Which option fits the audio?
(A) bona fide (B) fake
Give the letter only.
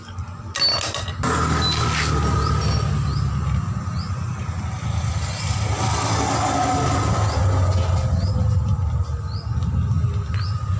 A